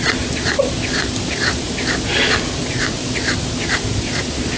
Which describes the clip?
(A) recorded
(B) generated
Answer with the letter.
A